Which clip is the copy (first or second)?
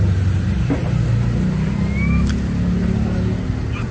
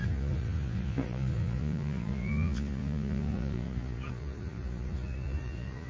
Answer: second